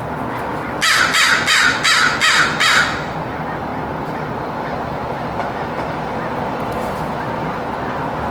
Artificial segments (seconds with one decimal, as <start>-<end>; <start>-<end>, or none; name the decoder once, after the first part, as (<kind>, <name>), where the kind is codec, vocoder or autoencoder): none